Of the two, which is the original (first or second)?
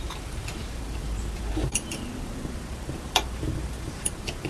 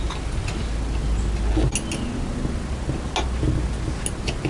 second